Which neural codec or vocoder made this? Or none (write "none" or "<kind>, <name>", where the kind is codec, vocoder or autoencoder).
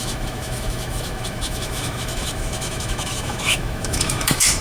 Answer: autoencoder, DAC-VAE